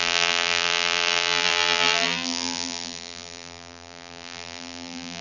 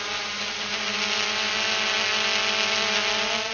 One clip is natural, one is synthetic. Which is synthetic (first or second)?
first